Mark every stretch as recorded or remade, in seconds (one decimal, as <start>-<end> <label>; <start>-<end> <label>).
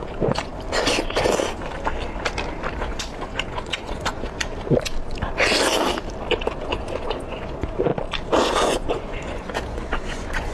0.0-0.5 remade; 0.5-2.8 recorded; 2.8-4.5 remade; 4.5-6.6 recorded; 6.6-7.9 remade; 7.9-8.4 recorded; 8.4-10.5 remade